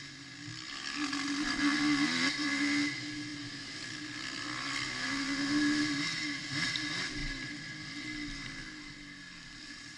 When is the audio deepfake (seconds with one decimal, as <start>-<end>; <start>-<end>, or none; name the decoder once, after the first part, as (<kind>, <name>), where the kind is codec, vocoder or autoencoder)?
0.5-1.6 (vocoder, BigVGAN v2); 7.2-8.0